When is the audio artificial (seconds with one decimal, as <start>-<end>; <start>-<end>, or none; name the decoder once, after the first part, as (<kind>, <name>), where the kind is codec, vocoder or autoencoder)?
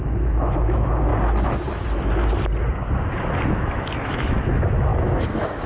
0.0-1.1 (autoencoder, DAC-VAE); 3.5-5.7